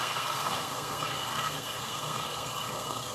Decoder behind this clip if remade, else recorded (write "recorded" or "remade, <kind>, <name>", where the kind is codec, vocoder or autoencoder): remade, codec, SNAC